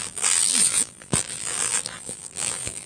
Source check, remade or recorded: remade